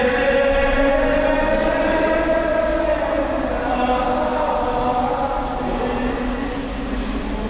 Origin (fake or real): real